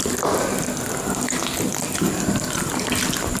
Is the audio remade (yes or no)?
no